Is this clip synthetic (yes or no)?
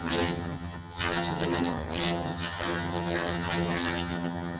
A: yes